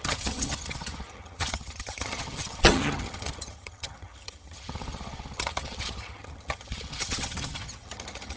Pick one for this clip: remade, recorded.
remade